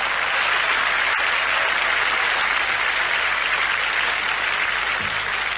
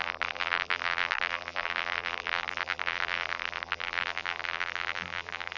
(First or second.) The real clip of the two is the first